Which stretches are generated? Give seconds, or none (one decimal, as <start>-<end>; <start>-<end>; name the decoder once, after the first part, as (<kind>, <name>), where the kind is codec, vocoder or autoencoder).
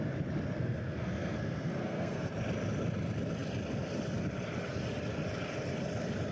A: 0.6-2.3 (codec, SNAC)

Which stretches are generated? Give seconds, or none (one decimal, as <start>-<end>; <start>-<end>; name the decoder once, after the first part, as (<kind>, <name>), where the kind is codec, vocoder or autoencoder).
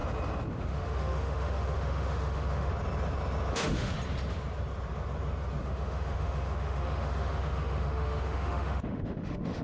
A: 0.5-2.7 (autoencoder, DAC-VAE); 3.5-3.9; 5.6-9.6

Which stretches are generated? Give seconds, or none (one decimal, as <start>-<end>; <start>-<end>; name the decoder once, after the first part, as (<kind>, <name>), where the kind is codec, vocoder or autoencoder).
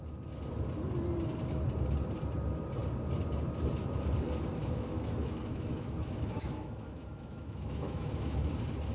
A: 4.6-8.5 (autoencoder, DAC-VAE)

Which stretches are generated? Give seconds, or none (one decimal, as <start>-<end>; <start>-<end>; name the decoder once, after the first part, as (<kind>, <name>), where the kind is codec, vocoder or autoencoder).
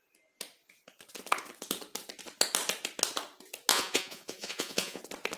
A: 3.7-5.0 (vocoder, Vocos)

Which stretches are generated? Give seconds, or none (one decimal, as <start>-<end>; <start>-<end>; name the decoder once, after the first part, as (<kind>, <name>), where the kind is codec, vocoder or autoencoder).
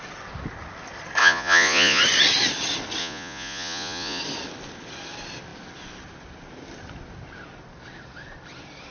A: 1.2-2.0 (vocoder, Vocos); 3.0-4.2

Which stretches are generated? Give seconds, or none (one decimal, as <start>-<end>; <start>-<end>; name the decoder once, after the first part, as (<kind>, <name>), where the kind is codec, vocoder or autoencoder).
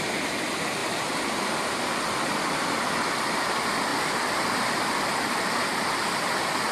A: none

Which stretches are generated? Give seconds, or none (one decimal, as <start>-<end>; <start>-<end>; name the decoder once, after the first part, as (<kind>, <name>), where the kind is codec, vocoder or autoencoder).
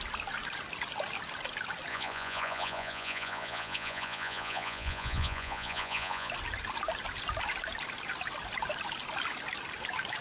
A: 1.9-6.3 (vocoder, Vocos)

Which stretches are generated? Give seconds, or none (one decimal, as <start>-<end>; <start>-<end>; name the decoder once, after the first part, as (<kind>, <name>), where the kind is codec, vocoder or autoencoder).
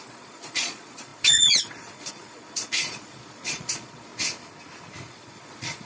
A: 0.0-4.1 (vocoder, Vocos); 5.1-5.9